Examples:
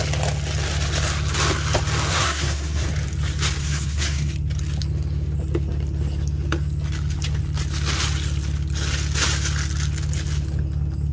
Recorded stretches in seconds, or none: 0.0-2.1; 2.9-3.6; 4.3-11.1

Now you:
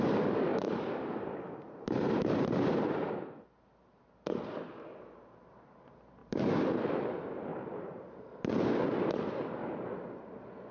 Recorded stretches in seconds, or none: 0.0-0.5; 3.1-6.2; 7.0-7.5; 8.1-10.7

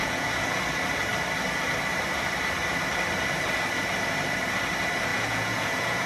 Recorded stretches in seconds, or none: 0.6-5.1

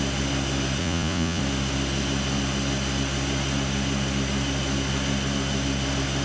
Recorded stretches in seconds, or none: 0.0-0.8; 1.4-6.2

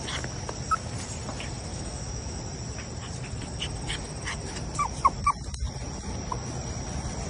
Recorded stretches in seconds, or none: 0.0-1.7; 2.4-7.3

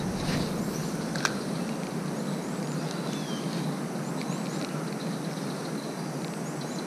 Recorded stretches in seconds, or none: 0.0-6.9